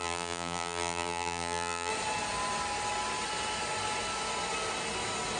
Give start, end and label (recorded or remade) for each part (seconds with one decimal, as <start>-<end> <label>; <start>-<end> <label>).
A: 0.0-1.9 remade; 1.9-5.4 recorded